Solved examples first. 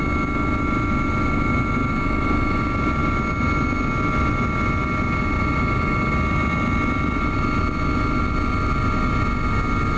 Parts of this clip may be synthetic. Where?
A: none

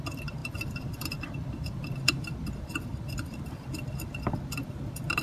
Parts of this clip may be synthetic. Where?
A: 0.4-3.5 (vocoder, BigVGAN v2)